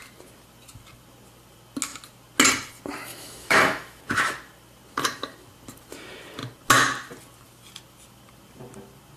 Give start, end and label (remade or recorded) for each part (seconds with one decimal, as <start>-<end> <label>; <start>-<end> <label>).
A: 0.0-3.1 recorded; 3.1-4.0 remade; 4.0-9.2 recorded